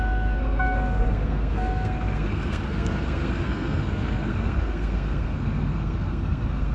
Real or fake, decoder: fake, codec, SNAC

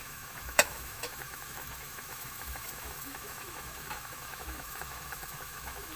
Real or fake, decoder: fake, autoencoder, DAC-VAE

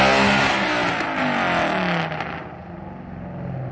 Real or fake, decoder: real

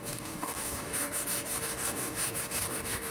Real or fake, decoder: fake, codec, DAC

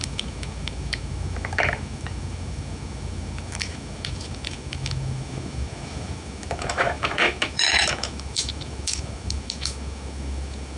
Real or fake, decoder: fake, autoencoder, DAC-VAE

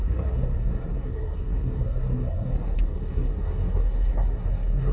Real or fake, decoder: fake, codec, SNAC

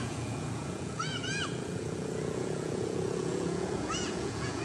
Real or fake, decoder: fake, vocoder, Vocos